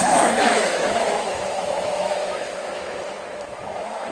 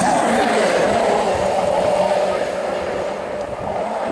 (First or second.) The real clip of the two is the second